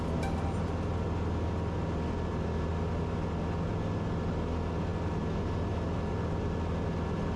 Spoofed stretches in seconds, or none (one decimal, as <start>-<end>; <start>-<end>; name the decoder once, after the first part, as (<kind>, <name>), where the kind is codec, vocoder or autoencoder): none